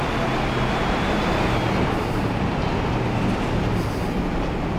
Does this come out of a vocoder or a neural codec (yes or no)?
no